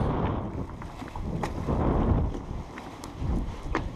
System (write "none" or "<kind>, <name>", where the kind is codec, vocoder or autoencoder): none